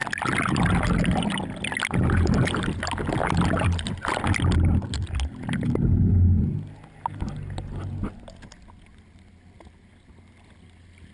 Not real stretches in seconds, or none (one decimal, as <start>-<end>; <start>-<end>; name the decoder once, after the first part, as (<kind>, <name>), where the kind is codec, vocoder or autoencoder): none